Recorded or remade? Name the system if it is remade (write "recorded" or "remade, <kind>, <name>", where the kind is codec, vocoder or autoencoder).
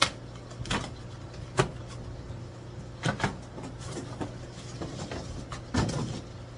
recorded